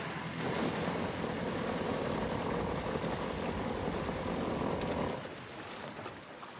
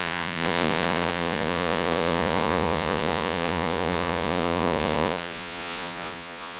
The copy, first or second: second